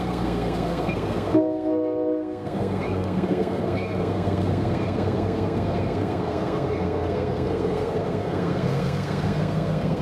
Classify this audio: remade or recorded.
remade